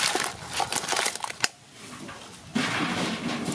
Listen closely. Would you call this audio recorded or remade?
recorded